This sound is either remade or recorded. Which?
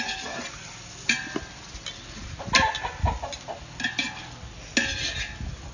recorded